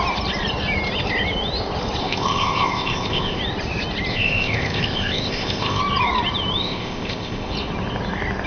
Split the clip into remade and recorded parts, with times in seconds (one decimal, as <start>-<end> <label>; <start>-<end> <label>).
0.0-2.0 recorded; 2.0-3.4 remade; 3.4-4.1 recorded; 4.1-5.8 remade; 5.8-6.6 recorded; 6.6-7.5 remade; 7.5-8.5 recorded